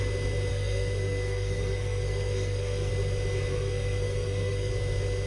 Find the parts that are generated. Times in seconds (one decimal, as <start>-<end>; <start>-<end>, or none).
0.5-2.9; 3.5-4.7

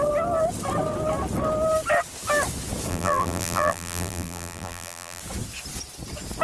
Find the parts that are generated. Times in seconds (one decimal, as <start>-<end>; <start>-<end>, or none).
2.9-5.2

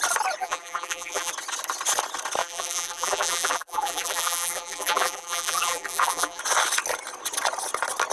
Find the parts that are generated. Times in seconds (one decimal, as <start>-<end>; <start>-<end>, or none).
0.4-1.3; 2.4-6.4

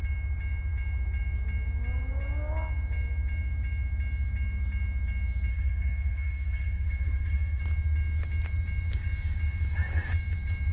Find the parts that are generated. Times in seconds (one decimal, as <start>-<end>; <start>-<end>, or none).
5.5-7.6